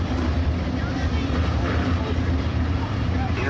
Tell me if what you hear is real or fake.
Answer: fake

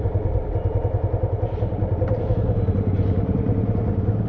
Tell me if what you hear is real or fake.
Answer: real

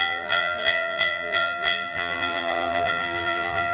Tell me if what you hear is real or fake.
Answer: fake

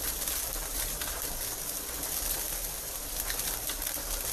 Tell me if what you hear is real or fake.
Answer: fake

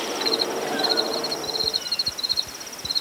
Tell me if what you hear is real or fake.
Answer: real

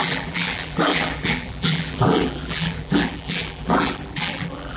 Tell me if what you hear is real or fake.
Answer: fake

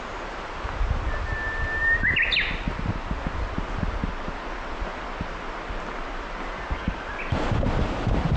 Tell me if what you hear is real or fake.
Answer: real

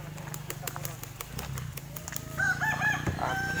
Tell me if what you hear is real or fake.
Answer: real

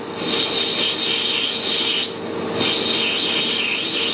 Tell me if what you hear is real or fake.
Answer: real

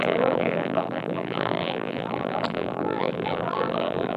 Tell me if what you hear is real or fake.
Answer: fake